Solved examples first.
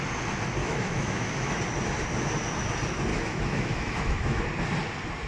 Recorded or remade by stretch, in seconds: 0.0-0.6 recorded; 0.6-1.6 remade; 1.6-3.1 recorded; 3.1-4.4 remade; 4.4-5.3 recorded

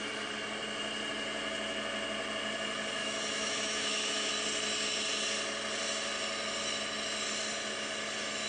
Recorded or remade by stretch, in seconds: 0.0-3.0 recorded; 3.0-4.3 remade; 4.3-8.5 recorded

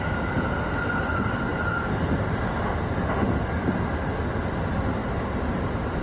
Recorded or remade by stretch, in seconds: 0.0-6.0 recorded

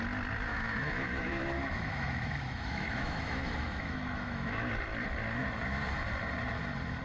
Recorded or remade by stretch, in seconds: 0.0-0.5 recorded; 0.5-4.7 remade; 4.7-7.0 recorded

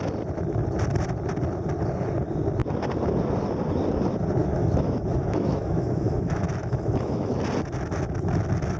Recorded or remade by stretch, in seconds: 0.0-4.4 recorded; 4.4-7.4 remade; 7.4-8.8 recorded

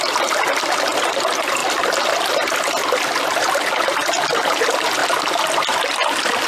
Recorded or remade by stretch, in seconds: 0.0-6.5 recorded

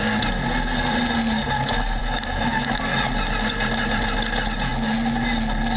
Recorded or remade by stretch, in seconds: 0.0-2.0 recorded; 2.0-2.8 remade; 2.8-5.8 recorded

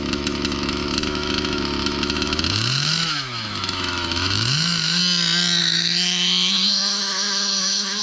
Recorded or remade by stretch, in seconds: 0.0-5.0 remade; 5.0-5.6 recorded; 5.6-8.0 remade